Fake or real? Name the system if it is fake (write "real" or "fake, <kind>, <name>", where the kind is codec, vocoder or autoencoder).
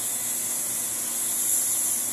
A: real